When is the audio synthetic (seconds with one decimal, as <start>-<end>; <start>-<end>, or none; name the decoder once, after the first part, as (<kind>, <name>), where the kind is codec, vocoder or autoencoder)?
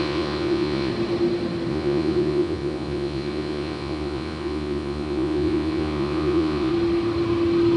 0.0-0.9 (vocoder, Vocos); 1.7-6.7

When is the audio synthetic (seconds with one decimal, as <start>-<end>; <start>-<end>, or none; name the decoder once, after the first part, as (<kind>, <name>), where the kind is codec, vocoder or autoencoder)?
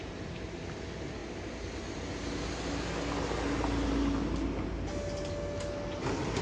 none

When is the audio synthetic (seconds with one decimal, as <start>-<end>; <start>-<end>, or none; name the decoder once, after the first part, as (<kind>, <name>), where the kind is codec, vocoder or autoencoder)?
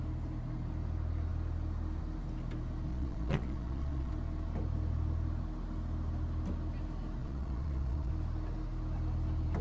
2.9-4.1 (vocoder, Vocos); 7.2-8.1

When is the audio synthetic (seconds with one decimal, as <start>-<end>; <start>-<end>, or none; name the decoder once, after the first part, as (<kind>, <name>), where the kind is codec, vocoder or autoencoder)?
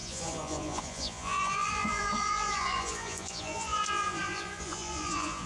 0.0-5.5 (vocoder, Vocos)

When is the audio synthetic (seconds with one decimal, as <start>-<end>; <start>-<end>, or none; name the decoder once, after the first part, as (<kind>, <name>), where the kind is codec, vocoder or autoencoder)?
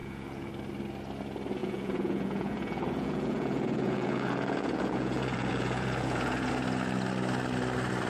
0.0-0.5 (vocoder, Vocos); 1.6-6.5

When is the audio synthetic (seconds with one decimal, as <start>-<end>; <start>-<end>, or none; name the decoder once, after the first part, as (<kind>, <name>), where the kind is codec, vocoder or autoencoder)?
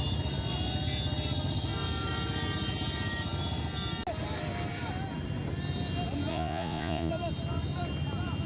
6.3-7.1 (vocoder, Vocos)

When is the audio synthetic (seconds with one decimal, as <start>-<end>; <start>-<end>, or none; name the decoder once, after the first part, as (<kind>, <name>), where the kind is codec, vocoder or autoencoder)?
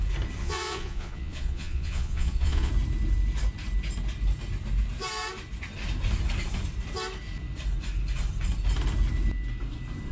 0.4-2.7 (vocoder, Vocos)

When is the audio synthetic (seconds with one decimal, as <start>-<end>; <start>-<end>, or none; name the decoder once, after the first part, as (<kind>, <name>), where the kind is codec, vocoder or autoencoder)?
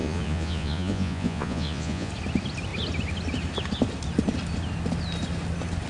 0.0-2.1 (vocoder, Vocos)